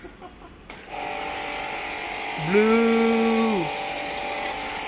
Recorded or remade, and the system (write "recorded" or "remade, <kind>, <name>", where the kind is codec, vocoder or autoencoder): recorded